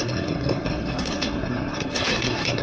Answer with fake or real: fake